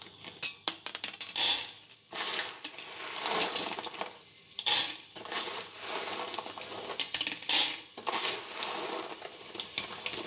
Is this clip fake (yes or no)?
no